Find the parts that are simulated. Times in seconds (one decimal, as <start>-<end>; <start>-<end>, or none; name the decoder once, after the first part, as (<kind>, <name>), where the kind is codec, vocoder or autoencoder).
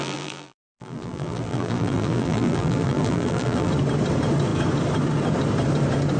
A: 0.0-3.7 (vocoder, BigVGAN v2)